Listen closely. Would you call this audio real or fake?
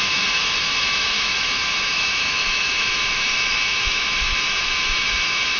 fake